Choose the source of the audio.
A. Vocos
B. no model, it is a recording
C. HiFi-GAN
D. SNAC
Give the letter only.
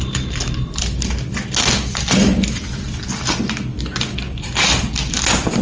B